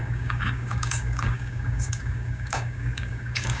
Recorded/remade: remade